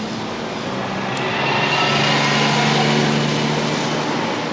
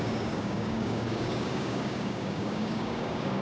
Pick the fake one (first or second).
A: second